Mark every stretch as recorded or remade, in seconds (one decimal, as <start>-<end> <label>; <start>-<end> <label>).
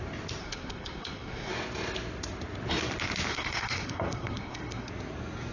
0.0-0.4 recorded; 0.4-1.5 remade; 1.5-3.3 recorded; 3.3-4.9 remade; 4.9-5.5 recorded